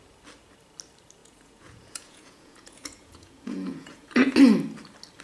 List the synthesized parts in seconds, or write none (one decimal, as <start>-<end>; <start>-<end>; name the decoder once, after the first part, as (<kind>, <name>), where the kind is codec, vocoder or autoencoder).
1.2-4.3 (vocoder, Vocos)